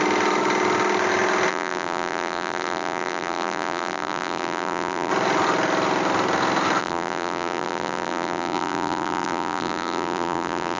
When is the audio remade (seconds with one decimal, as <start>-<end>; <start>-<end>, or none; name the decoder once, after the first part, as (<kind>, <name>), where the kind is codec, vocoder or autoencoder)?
1.5-5.1 (vocoder, BigVGAN v2); 6.8-10.8